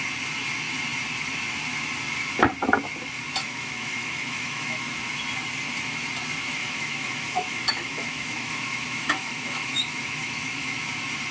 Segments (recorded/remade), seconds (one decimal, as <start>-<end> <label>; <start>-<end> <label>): 0.0-3.4 recorded; 3.4-5.2 remade; 5.2-6.6 recorded; 6.6-10.8 remade; 10.8-11.3 recorded